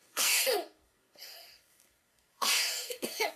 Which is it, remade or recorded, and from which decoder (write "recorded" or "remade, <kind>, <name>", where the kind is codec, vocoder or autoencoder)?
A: remade, codec, SNAC